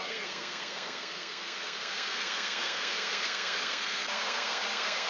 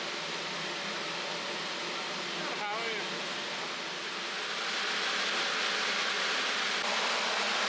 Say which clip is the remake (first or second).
first